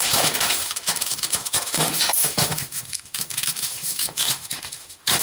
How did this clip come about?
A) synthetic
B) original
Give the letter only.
A